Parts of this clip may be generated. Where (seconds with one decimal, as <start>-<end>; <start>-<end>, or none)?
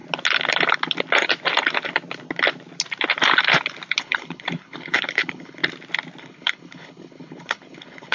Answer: 4.0-5.6; 6.2-8.1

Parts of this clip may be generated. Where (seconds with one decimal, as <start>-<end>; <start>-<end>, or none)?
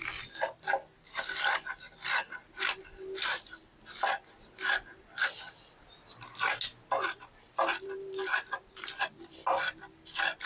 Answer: none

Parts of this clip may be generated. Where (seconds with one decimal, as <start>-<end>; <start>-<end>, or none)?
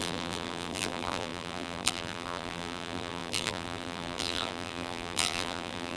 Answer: 0.0-6.0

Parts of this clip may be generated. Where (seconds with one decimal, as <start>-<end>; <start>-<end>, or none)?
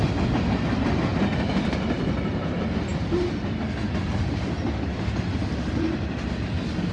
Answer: none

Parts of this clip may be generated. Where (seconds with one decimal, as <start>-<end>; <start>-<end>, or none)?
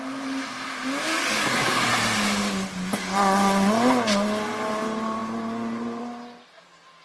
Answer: 1.1-1.9